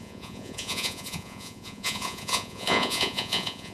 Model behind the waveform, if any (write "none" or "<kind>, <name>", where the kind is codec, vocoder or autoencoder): vocoder, Vocos